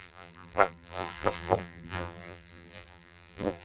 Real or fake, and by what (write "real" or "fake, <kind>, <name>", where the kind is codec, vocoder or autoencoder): fake, vocoder, BigVGAN v2